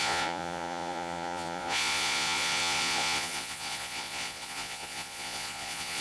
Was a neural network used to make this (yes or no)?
yes